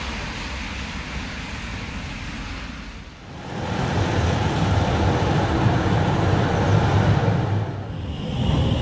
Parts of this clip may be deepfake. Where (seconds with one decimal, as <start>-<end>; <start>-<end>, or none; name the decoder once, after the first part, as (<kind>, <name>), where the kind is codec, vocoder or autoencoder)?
none